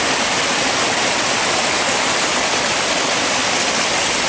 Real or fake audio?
real